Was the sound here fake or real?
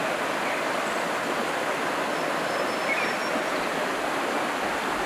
real